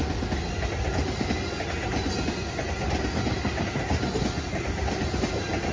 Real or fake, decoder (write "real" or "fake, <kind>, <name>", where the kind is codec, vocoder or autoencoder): real